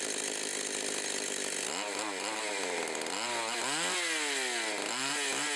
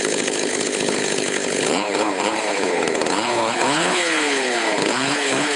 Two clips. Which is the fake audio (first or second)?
second